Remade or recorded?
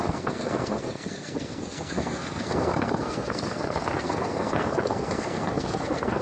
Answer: remade